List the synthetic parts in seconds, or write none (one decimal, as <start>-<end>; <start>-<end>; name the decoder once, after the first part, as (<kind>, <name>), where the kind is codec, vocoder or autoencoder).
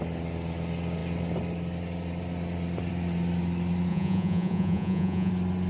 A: 3.9-5.3 (vocoder, Vocos)